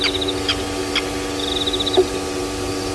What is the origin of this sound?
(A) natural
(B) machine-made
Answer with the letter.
A